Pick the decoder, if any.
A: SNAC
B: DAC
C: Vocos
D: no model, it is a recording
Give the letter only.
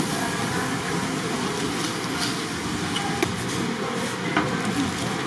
D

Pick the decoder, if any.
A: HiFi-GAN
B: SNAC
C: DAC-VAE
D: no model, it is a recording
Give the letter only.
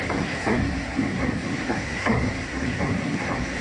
B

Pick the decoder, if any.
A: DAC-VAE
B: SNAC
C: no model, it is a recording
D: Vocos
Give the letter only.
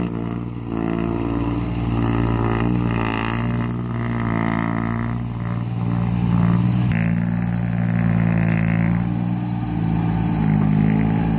C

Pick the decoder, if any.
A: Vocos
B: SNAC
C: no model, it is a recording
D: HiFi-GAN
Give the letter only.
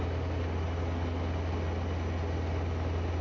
C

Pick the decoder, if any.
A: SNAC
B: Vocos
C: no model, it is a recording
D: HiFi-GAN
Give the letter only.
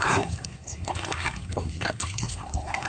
A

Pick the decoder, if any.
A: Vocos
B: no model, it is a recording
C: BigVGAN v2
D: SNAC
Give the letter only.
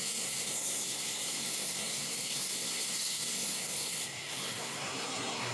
D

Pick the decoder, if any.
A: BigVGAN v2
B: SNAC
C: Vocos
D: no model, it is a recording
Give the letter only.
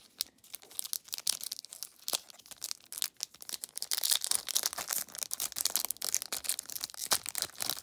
D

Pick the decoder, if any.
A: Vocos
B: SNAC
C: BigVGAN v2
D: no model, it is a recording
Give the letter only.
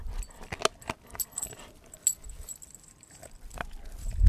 D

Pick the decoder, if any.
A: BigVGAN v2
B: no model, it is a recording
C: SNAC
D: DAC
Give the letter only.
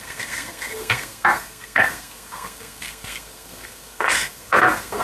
C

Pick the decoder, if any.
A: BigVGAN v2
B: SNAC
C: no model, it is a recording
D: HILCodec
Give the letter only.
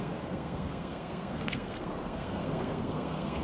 B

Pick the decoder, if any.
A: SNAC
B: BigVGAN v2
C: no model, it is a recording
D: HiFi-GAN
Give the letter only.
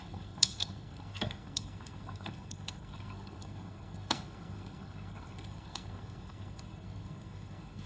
A